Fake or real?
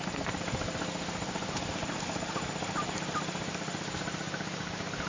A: real